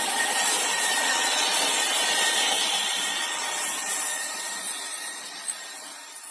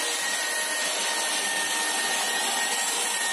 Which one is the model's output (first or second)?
first